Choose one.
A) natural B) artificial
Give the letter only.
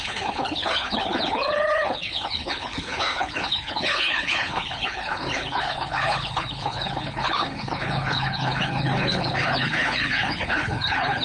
B